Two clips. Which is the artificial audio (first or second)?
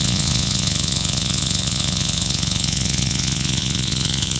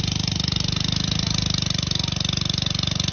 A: first